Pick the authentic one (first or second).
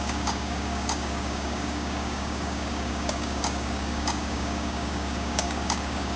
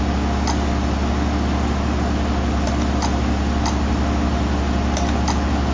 second